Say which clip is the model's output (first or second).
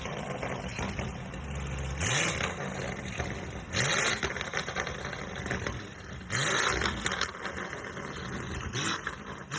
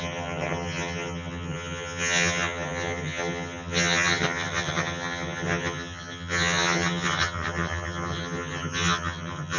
second